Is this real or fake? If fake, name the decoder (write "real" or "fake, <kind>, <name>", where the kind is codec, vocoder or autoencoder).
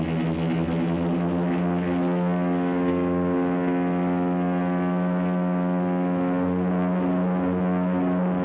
real